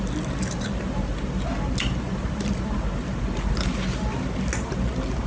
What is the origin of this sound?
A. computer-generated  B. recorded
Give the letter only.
B